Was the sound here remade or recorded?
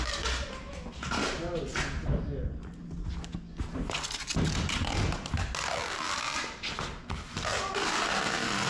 recorded